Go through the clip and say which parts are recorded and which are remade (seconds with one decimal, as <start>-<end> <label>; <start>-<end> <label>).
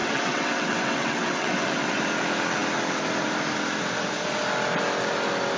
0.0-2.0 remade; 2.0-5.6 recorded